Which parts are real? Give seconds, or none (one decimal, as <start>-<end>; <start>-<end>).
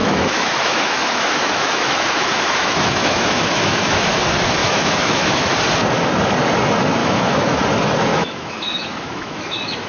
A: 4.1-4.6; 5.5-7.0; 7.6-8.1